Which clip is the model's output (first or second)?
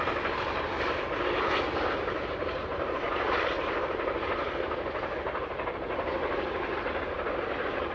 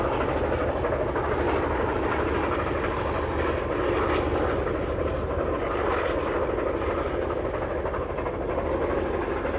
first